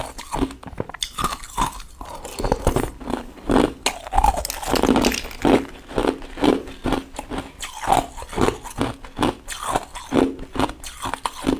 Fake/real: real